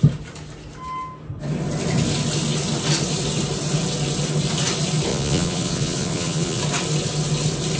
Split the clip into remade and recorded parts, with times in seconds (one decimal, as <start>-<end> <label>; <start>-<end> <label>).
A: 0.0-5.1 recorded; 5.1-6.6 remade; 6.6-7.8 recorded